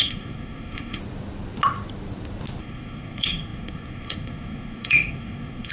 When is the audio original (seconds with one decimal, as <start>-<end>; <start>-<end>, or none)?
1.0-2.6